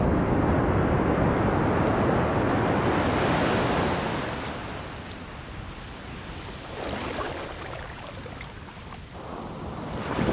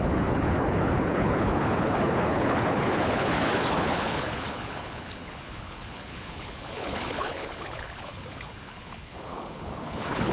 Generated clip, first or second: second